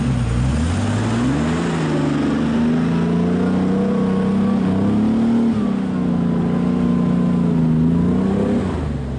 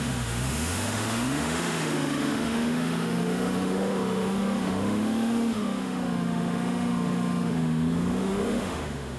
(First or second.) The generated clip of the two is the second